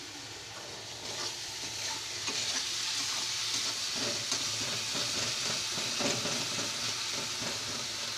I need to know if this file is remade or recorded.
recorded